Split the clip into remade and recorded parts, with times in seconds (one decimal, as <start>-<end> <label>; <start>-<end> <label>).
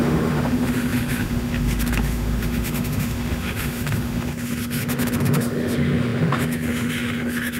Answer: 0.0-7.6 remade